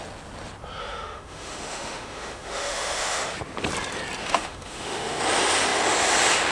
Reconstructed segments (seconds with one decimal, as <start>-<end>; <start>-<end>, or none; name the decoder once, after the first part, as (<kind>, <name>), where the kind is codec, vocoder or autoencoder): 0.8-3.2 (autoencoder, DAC-VAE); 4.2-5.2